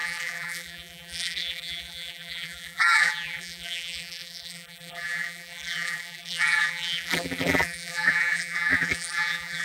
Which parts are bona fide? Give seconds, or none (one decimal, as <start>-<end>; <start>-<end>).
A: none